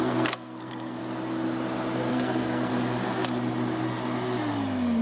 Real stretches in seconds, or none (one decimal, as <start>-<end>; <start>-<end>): 1.0-2.1; 2.7-5.0